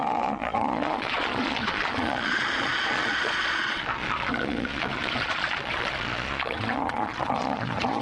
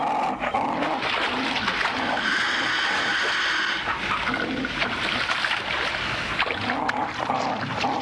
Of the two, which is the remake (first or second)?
first